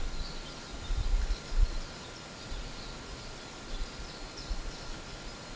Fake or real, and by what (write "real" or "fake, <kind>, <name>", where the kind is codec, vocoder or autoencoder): real